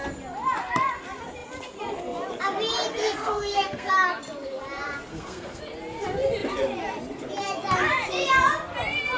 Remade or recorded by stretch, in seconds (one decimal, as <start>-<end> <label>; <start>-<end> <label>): 0.0-3.0 recorded; 3.0-3.9 remade; 3.9-5.1 recorded; 5.1-5.6 remade; 5.6-9.2 recorded